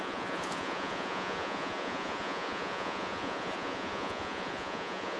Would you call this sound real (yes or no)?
no